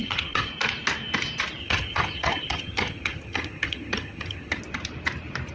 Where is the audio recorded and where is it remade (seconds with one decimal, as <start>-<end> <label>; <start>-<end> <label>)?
0.0-0.5 remade; 0.5-1.6 recorded; 1.6-4.6 remade; 4.6-5.5 recorded